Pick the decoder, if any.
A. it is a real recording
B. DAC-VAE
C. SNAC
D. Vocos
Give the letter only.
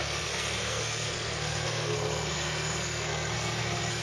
C